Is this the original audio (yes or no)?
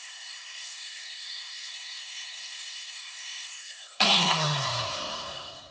no